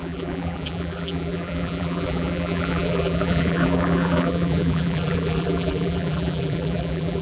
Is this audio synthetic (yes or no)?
yes